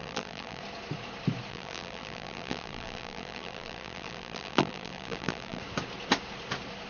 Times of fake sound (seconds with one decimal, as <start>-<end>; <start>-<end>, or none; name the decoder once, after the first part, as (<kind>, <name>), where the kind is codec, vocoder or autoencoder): 0.0-0.6 (vocoder, BigVGAN v2); 1.5-5.6